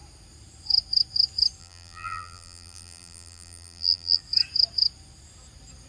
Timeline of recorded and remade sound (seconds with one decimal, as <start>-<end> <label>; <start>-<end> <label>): 0.0-1.6 recorded; 1.6-4.2 remade; 4.2-5.9 recorded